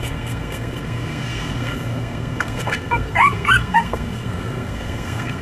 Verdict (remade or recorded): remade